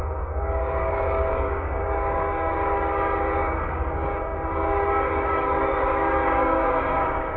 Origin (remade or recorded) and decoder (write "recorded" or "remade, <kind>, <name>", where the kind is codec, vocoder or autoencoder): remade, codec, DAC